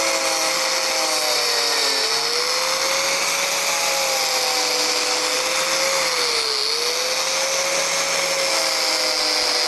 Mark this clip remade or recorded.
recorded